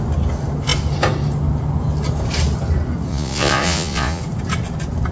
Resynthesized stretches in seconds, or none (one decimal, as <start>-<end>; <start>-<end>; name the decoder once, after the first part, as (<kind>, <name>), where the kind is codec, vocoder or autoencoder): 3.1-4.2 (vocoder, Vocos)